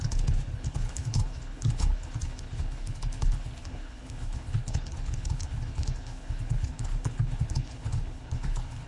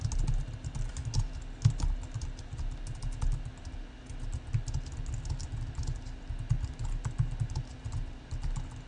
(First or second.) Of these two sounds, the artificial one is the first